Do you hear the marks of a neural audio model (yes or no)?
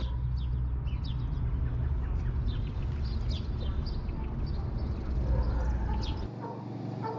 no